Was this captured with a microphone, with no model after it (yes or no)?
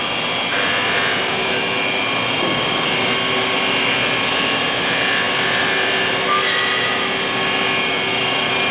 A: yes